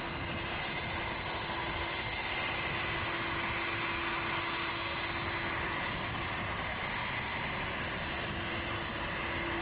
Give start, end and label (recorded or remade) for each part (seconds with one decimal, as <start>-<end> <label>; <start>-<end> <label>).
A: 0.0-9.6 recorded

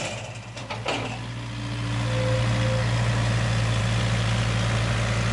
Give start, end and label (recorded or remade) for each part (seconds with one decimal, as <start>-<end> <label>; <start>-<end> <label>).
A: 0.0-0.6 remade; 0.6-3.8 recorded; 3.8-5.3 remade